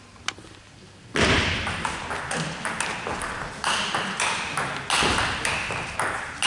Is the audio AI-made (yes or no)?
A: no